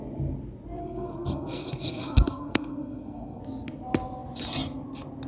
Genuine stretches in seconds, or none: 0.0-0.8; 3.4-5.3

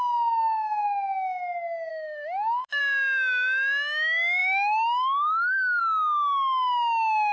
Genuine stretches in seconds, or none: 0.0-1.9; 2.8-4.4; 5.8-7.3

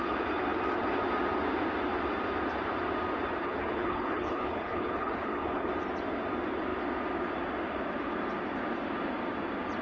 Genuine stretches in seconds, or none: 0.0-3.4; 5.7-9.8

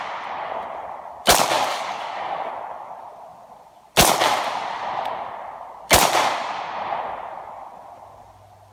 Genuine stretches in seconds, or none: 0.0-1.7; 2.5-8.7

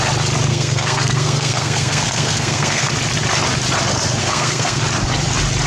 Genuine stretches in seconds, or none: 0.0-0.5; 2.9-4.2; 4.8-5.7